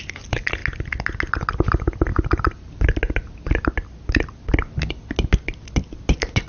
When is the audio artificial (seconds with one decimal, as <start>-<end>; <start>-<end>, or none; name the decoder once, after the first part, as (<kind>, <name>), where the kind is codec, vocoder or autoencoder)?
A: none